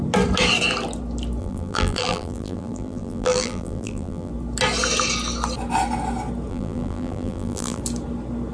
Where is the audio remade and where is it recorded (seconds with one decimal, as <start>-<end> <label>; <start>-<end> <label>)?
0.0-1.4 recorded; 1.4-4.3 remade; 4.3-6.5 recorded; 6.5-7.8 remade; 7.8-8.5 recorded